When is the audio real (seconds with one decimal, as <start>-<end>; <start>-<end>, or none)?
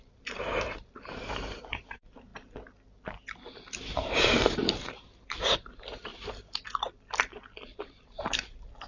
2.3-3.8; 6.1-7.8